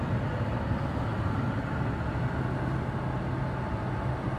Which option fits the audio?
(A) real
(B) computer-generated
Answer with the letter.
A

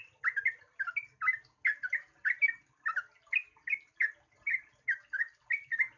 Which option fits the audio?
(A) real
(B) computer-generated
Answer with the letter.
A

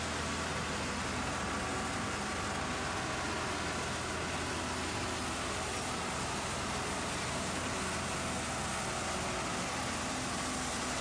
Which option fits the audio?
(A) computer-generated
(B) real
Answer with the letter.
B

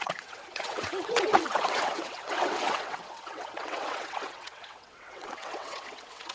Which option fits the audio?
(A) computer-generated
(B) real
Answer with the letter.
A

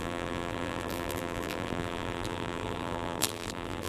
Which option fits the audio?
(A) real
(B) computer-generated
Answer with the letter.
B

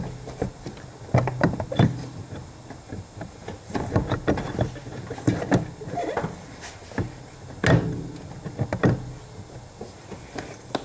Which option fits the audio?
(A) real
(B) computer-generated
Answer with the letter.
A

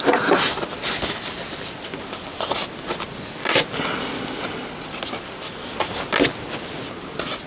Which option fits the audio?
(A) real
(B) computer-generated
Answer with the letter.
A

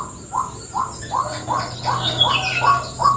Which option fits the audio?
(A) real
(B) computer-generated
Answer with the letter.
A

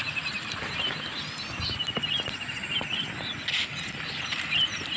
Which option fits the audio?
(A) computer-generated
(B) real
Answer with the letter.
B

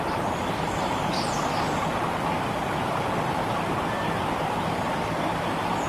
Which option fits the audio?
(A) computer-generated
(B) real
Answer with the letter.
B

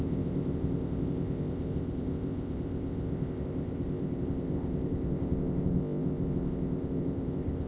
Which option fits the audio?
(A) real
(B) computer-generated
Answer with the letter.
B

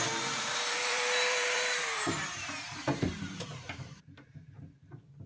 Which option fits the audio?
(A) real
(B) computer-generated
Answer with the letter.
B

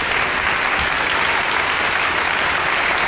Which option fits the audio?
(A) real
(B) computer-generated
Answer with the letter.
A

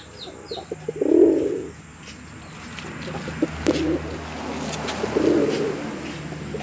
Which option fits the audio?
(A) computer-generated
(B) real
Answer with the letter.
B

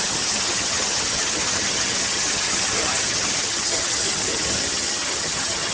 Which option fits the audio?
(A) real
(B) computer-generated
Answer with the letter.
B